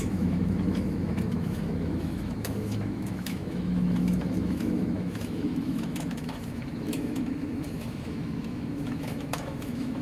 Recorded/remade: remade